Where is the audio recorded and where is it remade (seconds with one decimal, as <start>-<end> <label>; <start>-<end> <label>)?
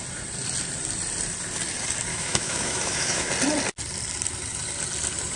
0.0-2.1 recorded; 2.1-3.3 remade; 3.3-5.4 recorded